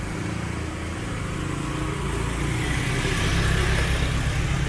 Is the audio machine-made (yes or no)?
no